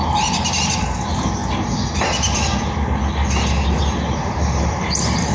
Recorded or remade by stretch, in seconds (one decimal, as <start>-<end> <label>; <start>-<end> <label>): 0.0-0.8 recorded; 0.8-1.4 remade; 1.4-4.6 recorded; 4.6-5.3 remade